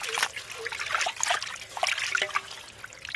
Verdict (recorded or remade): recorded